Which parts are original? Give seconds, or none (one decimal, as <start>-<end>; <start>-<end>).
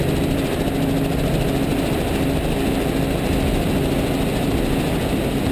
0.0-5.5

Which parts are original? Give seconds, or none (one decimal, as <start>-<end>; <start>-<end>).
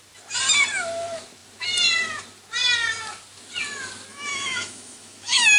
0.0-4.1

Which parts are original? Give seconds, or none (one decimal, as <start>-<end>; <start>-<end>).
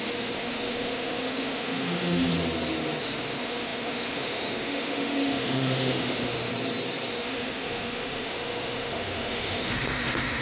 2.3-3.0; 6.5-7.1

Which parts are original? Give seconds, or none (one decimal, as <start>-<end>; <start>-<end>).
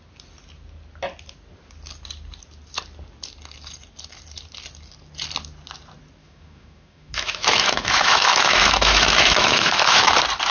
0.0-6.2; 10.1-10.5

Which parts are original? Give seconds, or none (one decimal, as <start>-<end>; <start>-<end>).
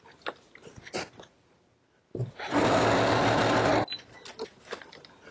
0.0-5.3